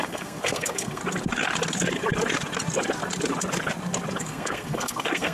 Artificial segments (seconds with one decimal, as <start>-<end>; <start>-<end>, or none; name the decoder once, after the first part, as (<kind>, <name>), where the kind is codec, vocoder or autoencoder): 0.0-1.0 (codec, SNAC); 4.2-5.3